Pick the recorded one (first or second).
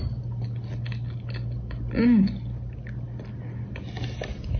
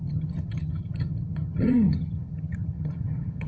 first